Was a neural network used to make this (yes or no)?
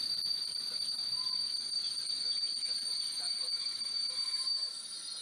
no